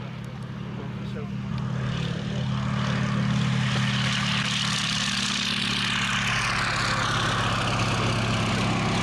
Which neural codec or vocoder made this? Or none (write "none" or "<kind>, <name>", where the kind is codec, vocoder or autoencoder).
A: none